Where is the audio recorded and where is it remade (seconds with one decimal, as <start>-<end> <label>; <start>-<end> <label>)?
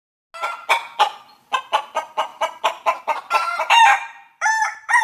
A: 0.0-3.4 recorded; 3.4-4.5 remade; 4.5-5.0 recorded